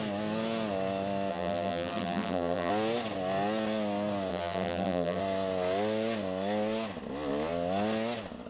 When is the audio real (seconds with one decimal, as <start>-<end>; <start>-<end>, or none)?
0.0-1.3; 2.7-4.3; 5.2-8.5